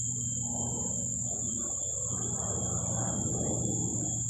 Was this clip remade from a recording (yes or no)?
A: yes